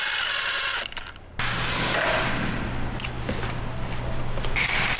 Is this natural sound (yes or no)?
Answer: yes